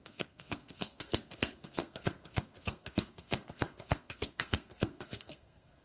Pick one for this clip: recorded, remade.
remade